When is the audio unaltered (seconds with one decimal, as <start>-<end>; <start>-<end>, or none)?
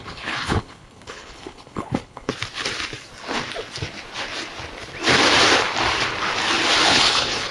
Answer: 2.3-6.8